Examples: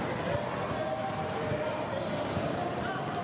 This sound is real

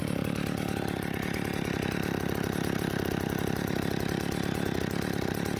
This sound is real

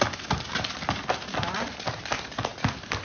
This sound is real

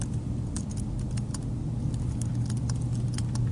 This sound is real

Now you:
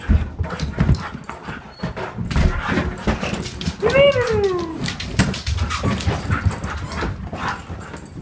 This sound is real